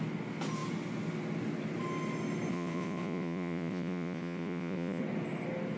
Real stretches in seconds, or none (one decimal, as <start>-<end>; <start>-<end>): 0.0-2.5; 5.0-5.8

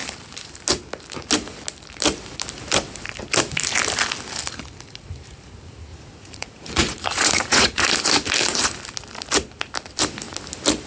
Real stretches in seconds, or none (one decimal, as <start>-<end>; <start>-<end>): 0.0-5.9; 7.9-10.9

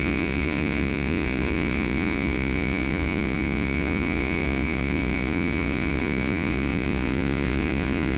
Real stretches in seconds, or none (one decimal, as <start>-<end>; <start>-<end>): none